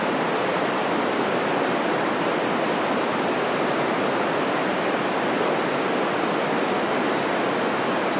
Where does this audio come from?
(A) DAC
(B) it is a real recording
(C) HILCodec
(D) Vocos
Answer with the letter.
B